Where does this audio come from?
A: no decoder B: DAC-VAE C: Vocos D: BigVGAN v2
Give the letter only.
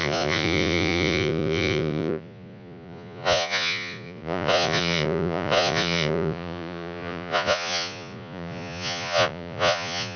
C